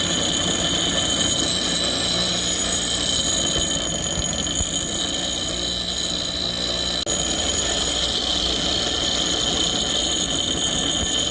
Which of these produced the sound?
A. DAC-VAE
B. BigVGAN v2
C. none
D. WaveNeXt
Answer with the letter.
C